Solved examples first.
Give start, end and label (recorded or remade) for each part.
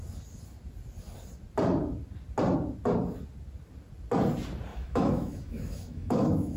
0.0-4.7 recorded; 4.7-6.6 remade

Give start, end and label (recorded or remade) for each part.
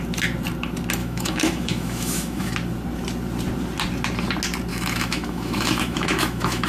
0.0-1.0 recorded; 1.0-2.5 remade; 2.5-4.7 recorded; 4.7-6.7 remade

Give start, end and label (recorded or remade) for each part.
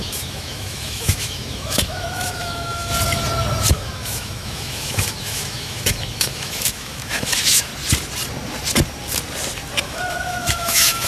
0.0-2.9 remade; 2.9-3.7 recorded; 3.7-7.7 remade; 7.7-9.8 recorded; 9.8-11.1 remade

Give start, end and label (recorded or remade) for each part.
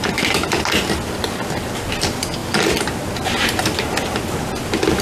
0.0-5.0 recorded